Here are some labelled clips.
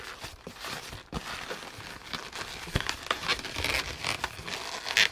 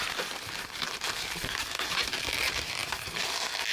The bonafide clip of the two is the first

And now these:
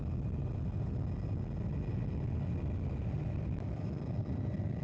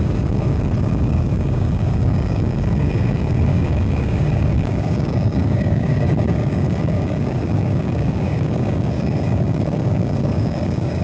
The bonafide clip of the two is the first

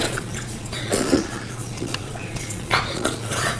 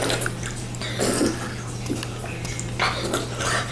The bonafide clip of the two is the second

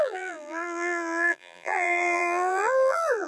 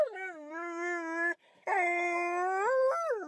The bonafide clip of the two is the second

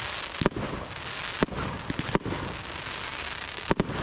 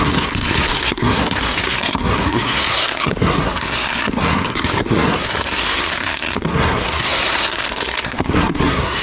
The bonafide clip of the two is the first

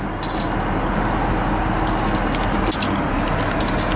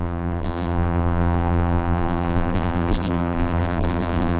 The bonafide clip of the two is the first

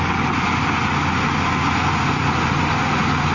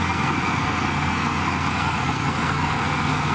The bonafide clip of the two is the first